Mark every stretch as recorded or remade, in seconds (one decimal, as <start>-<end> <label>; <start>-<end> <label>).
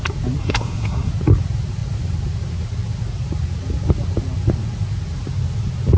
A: 0.0-0.4 recorded; 0.4-1.1 remade; 1.1-6.0 recorded